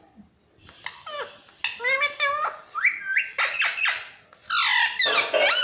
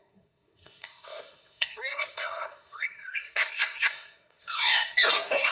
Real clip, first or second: first